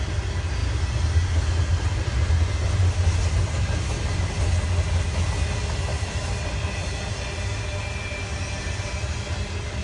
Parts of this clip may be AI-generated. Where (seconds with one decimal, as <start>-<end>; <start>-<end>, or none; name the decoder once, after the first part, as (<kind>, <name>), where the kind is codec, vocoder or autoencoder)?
none